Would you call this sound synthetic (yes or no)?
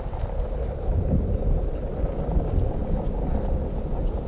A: no